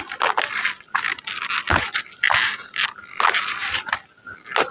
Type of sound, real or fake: real